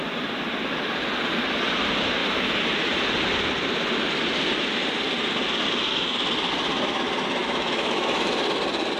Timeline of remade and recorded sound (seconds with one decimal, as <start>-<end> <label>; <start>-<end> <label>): 0.0-7.4 recorded; 7.4-8.3 remade; 8.3-9.0 recorded